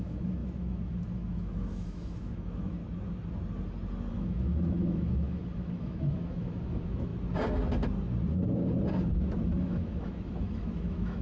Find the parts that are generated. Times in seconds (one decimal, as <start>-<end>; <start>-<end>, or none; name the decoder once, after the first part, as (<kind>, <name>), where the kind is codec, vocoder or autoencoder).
0.0-2.8 (autoencoder, DAC-VAE); 4.1-7.1; 9.6-11.2

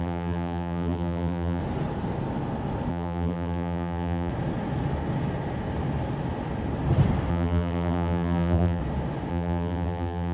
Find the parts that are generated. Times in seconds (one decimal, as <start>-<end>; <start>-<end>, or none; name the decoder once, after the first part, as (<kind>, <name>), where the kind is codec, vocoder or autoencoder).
0.0-1.6 (vocoder, BigVGAN v2); 2.9-4.3; 7.3-8.8; 9.3-10.3

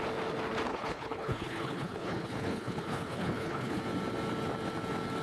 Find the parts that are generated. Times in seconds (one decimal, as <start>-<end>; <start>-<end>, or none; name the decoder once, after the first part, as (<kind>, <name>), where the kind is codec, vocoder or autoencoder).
0.7-3.8 (codec, HILCodec)

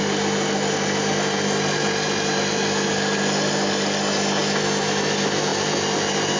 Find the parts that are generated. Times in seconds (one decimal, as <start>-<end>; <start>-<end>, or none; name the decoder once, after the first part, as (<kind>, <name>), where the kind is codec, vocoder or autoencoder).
none

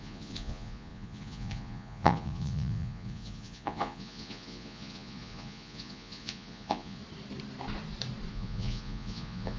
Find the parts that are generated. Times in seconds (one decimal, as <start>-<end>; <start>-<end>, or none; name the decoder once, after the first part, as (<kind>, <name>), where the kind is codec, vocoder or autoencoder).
0.0-7.0 (vocoder, Vocos); 8.3-9.6

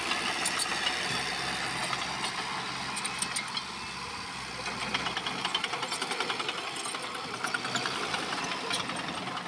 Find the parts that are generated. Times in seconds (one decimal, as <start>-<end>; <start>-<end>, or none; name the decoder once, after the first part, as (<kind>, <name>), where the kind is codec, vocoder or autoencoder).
none

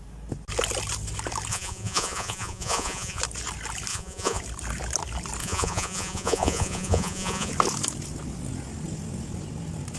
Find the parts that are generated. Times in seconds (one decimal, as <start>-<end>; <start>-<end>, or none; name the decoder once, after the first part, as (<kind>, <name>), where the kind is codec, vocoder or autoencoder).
1.5-3.2 (vocoder, Vocos); 3.9-4.4; 5.4-7.5